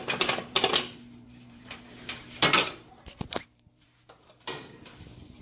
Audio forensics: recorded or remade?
remade